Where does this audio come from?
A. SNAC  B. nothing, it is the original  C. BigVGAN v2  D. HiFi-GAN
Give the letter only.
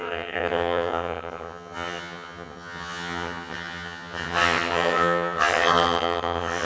D